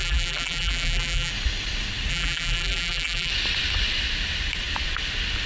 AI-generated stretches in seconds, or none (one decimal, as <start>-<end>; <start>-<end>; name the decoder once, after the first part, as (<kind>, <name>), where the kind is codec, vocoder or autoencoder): 0.0-1.3 (vocoder, BigVGAN v2); 2.1-3.3